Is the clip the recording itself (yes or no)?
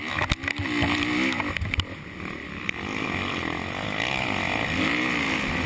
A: yes